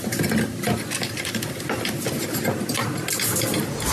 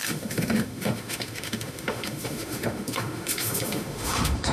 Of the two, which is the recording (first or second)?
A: first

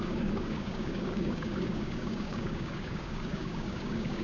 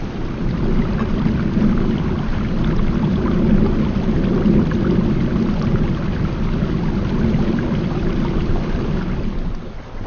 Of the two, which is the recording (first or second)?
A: second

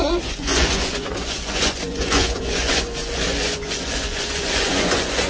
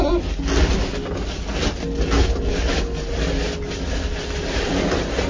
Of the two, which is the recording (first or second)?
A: second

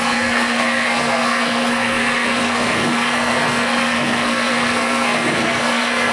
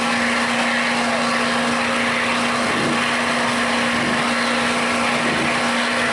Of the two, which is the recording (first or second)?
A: second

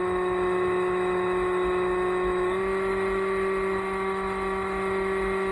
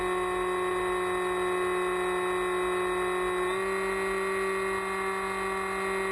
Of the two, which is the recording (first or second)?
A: second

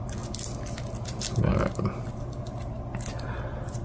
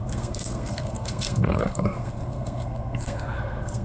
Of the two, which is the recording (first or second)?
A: first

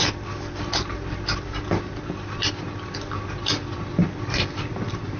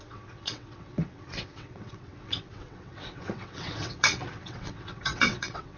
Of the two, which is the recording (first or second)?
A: first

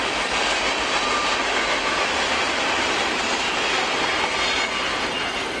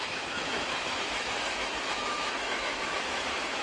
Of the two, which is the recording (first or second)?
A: first